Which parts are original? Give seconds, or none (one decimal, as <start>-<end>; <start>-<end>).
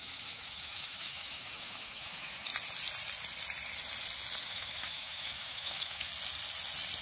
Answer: 2.5-4.5; 6.1-7.0